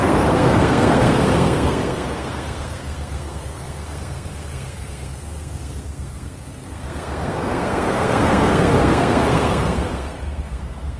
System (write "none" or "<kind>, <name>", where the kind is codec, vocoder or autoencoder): codec, SNAC